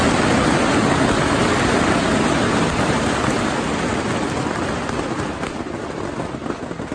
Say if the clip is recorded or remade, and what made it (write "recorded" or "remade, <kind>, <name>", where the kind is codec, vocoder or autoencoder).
recorded